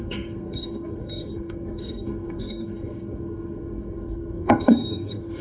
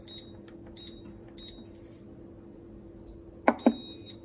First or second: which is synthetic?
first